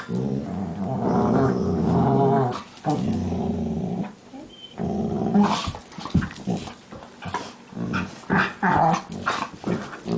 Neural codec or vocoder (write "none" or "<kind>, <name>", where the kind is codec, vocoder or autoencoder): none